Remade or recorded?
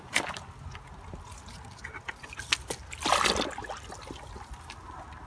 recorded